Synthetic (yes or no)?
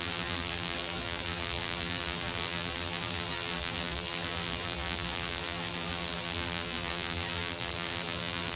yes